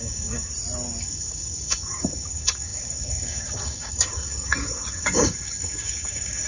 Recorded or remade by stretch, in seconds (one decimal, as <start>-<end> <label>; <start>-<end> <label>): 0.0-0.5 remade; 0.5-1.0 recorded; 1.0-6.5 remade